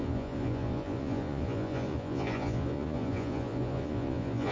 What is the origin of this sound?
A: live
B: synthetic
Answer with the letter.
B